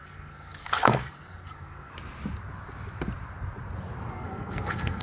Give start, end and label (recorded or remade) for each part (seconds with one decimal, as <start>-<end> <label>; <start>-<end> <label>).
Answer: 0.0-1.9 remade; 1.9-4.1 recorded; 4.1-5.0 remade